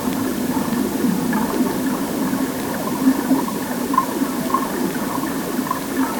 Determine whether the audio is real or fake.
real